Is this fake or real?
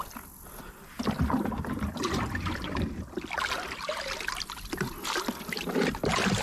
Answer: real